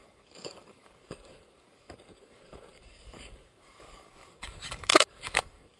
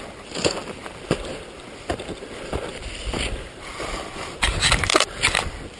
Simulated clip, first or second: first